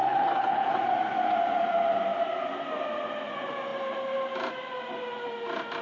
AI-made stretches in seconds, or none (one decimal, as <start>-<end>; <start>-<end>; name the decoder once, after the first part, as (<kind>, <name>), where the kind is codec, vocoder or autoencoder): 0.0-0.7 (codec, HILCodec)